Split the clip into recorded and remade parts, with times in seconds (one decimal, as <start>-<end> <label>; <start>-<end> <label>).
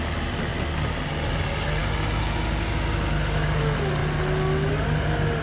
0.0-5.4 recorded